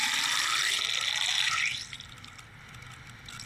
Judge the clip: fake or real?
real